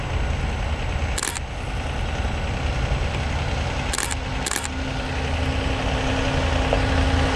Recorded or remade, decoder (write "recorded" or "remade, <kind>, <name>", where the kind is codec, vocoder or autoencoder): recorded